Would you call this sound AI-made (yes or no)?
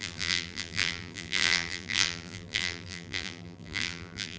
yes